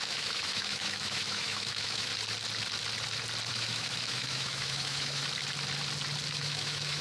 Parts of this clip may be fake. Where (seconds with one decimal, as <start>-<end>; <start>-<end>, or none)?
0.0-2.1; 3.5-5.2; 6.3-7.0